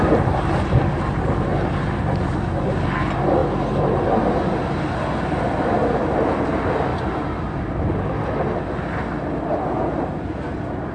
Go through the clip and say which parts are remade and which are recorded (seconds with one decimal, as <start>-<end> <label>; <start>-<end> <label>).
0.0-1.5 recorded; 1.5-2.7 remade; 2.7-6.9 recorded; 6.9-8.2 remade; 8.2-10.9 recorded